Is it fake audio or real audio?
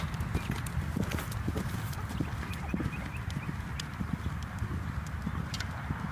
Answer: real